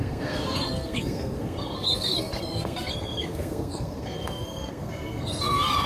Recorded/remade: remade